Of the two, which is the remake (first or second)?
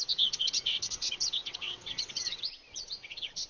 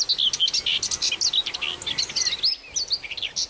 first